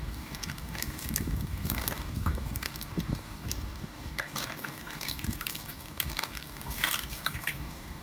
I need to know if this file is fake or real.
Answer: fake